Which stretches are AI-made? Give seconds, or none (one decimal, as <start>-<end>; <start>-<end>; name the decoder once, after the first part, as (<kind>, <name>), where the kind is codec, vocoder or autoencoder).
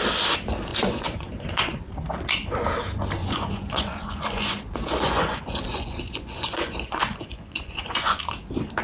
0.7-1.9 (vocoder, Vocos); 3.2-8.2